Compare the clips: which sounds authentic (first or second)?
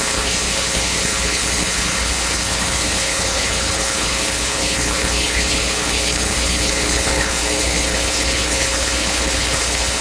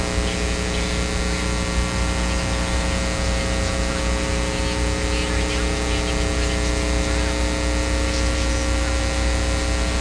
second